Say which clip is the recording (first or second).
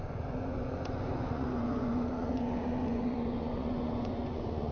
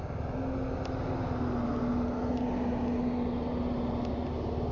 second